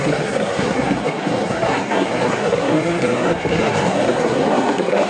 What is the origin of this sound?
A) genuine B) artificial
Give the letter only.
B